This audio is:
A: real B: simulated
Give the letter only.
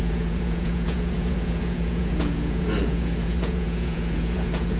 B